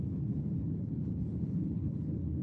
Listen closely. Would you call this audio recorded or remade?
remade